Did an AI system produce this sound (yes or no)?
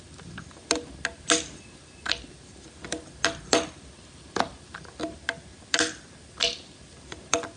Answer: no